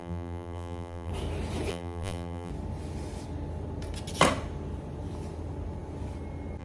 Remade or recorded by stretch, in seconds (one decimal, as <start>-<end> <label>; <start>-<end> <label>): 0.0-1.1 remade; 1.1-1.7 recorded; 1.7-2.5 remade; 2.5-6.6 recorded

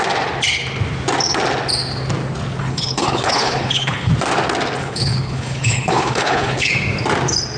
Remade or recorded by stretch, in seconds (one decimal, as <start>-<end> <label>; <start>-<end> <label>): 0.0-2.6 recorded; 2.6-4.1 remade; 4.1-4.8 recorded; 4.8-6.7 remade; 6.7-7.6 recorded

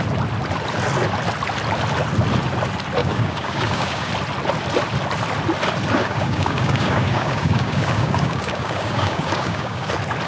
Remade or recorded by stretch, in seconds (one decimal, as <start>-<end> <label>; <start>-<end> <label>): 0.0-3.0 recorded; 3.0-4.1 remade; 4.1-6.0 recorded; 6.0-9.9 remade; 9.9-10.3 recorded

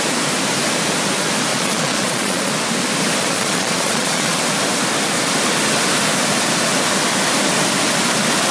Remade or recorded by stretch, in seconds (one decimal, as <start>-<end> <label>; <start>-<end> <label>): 0.0-1.5 recorded; 1.5-2.5 remade; 2.5-3.2 recorded; 3.2-4.4 remade; 4.4-8.5 recorded

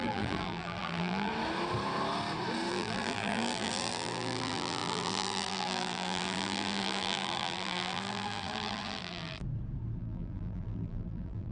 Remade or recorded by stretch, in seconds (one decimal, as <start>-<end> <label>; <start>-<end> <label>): 0.0-1.3 remade; 1.3-2.7 recorded; 2.7-9.4 remade; 9.4-10.0 recorded; 10.0-11.5 remade

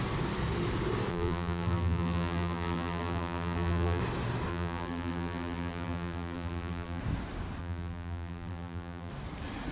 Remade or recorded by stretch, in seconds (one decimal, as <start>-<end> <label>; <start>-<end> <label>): 0.0-1.1 recorded; 1.1-4.0 remade; 4.0-4.5 recorded; 4.5-7.0 remade; 7.0-7.6 recorded; 7.6-9.1 remade; 9.1-9.7 recorded